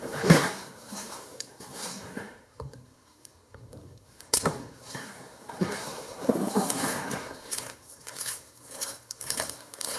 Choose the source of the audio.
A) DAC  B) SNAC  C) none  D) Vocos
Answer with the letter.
B